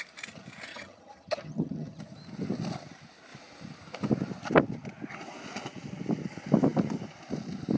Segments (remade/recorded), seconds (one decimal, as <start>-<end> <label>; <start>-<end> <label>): 0.0-0.7 recorded; 0.7-2.0 remade; 2.0-7.8 recorded